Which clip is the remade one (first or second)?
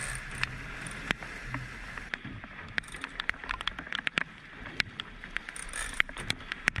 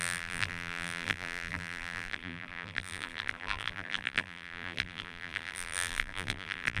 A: second